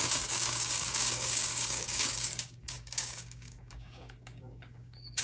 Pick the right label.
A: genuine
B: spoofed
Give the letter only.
B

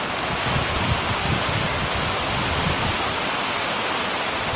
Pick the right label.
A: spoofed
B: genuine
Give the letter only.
B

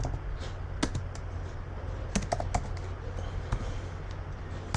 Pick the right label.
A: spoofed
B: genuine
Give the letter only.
B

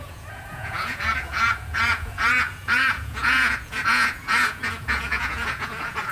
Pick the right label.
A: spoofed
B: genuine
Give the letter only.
A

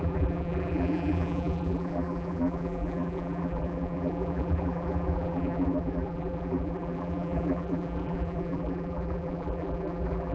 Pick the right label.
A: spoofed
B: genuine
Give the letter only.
A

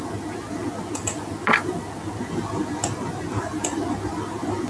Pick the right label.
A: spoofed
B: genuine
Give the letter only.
B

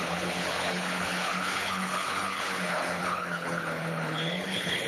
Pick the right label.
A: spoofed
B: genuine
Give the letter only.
A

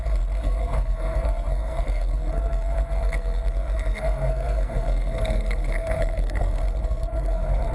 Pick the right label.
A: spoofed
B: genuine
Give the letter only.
A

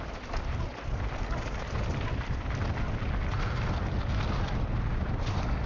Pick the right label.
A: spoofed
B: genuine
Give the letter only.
B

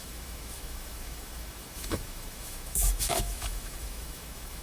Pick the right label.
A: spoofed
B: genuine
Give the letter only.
A